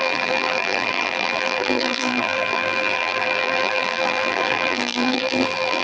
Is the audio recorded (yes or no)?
no